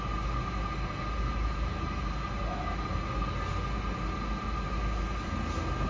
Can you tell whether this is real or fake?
real